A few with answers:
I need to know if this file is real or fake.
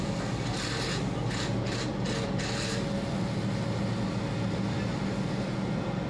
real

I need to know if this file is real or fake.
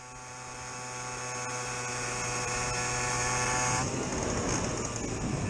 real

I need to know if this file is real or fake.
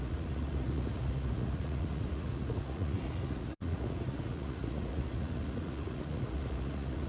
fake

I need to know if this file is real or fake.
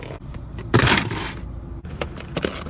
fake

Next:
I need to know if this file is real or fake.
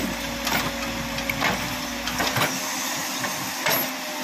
real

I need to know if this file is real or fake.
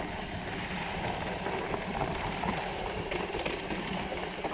real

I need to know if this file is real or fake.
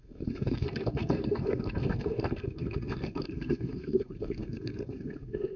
fake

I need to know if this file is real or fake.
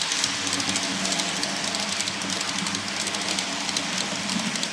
real